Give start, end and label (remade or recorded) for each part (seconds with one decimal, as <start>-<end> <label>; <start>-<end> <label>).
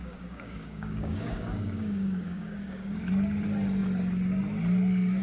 0.0-3.1 remade; 3.1-5.2 recorded